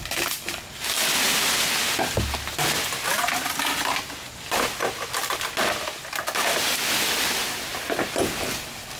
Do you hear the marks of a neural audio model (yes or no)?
no